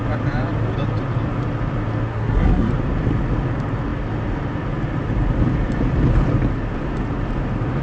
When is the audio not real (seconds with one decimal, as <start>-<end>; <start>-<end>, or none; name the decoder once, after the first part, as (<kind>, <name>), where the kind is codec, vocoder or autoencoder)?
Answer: 2.1-2.7 (codec, SNAC)